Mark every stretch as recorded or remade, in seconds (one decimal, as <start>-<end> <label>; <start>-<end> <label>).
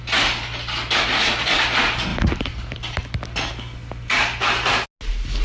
0.0-5.4 recorded